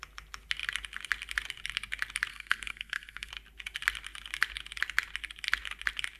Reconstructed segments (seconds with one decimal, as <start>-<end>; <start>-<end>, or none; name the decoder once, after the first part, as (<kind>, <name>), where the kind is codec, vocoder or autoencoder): 2.3-3.3 (codec, SNAC)